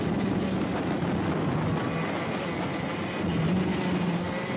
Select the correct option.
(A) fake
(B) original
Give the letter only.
B